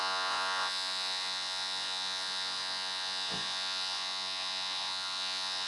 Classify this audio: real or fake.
fake